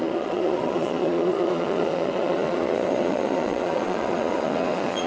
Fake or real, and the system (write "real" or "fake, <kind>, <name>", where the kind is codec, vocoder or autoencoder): fake, vocoder, Vocos